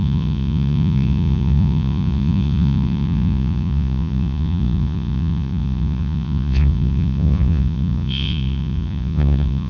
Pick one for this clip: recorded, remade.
remade